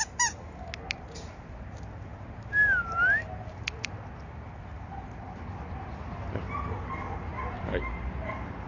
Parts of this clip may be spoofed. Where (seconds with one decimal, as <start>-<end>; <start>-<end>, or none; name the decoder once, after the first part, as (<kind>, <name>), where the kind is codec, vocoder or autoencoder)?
none